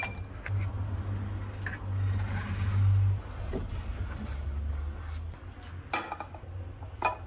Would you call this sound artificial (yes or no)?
no